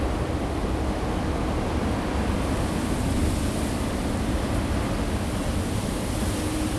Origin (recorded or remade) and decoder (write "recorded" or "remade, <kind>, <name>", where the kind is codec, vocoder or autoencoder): recorded